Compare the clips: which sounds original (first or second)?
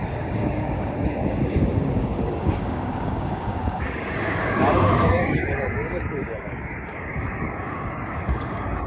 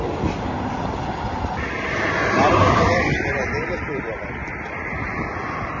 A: second